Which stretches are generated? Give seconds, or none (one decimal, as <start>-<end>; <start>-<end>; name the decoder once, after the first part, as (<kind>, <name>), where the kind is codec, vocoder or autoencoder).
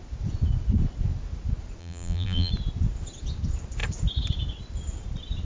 1.8-2.5 (vocoder, BigVGAN v2)